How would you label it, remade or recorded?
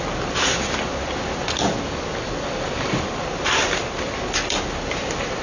recorded